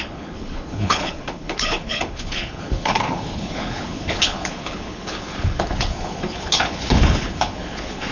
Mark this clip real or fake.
fake